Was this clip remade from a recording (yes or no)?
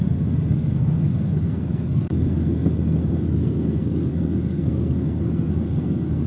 yes